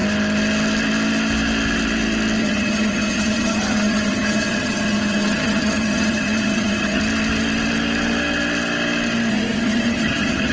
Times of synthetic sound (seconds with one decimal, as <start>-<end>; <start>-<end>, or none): 2.4-7.0; 9.3-10.5